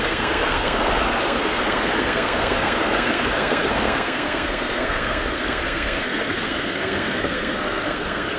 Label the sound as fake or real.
fake